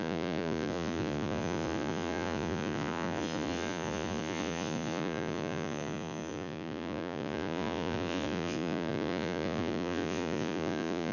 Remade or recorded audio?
remade